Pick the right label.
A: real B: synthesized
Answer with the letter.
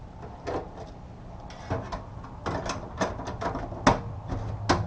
A